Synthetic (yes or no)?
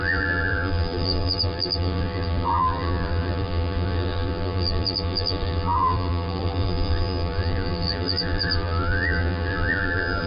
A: yes